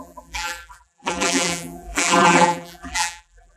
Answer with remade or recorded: remade